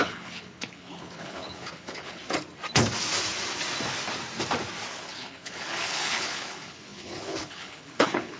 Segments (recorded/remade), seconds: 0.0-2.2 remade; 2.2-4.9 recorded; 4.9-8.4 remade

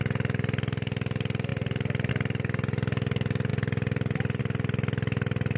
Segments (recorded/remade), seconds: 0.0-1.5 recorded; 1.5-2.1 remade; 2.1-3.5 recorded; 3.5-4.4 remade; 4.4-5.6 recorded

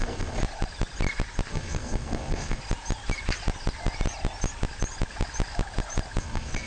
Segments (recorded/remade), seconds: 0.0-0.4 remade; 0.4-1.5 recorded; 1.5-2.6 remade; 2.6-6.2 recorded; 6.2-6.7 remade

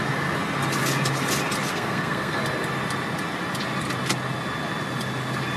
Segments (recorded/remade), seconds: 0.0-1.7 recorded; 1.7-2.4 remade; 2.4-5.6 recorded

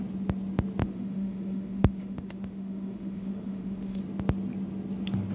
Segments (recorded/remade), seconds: 0.0-0.8 recorded; 0.8-4.0 remade; 4.0-5.3 recorded

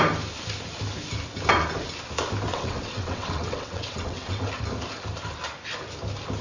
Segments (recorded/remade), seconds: 0.0-2.5 recorded; 2.5-4.5 remade; 4.5-6.4 recorded

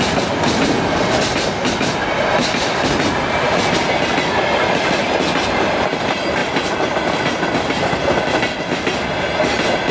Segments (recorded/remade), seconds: 0.0-9.9 recorded

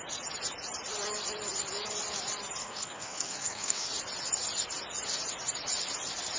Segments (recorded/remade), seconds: 0.0-2.6 recorded; 2.6-3.9 remade; 3.9-6.4 recorded